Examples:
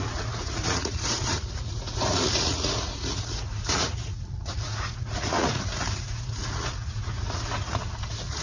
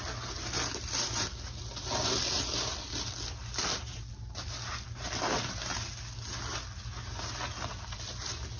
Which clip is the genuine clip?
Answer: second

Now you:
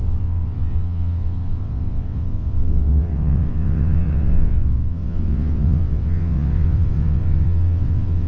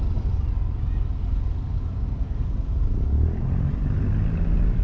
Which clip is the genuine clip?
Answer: second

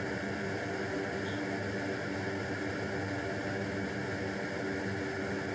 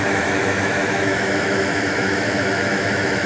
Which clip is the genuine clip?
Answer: first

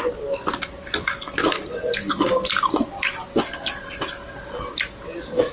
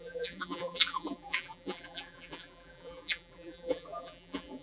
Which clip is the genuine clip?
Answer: first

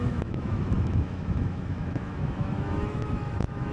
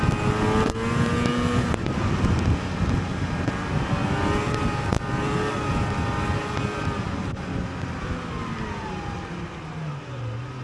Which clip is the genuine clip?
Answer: second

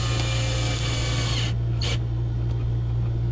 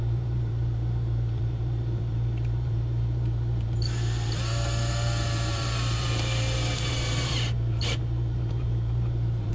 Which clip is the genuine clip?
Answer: first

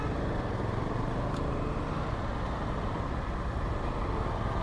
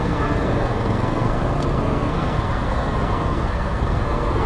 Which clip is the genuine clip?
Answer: first